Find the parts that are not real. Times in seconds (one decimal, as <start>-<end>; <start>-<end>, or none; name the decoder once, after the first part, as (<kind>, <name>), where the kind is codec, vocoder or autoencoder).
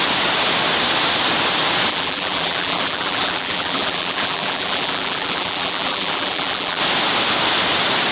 1.9-6.8 (vocoder, BigVGAN v2)